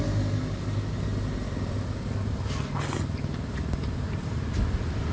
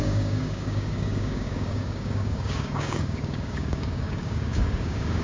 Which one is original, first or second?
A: first